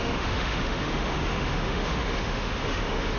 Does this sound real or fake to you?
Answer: fake